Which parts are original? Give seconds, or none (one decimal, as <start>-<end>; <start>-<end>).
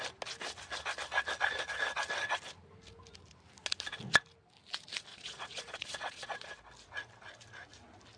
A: 0.0-5.1; 6.5-8.2